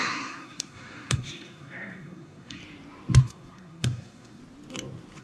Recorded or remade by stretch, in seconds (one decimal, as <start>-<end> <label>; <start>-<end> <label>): 0.0-2.6 remade; 2.6-3.2 recorded; 3.2-4.4 remade; 4.4-5.2 recorded